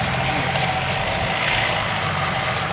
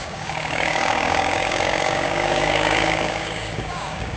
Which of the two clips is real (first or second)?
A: first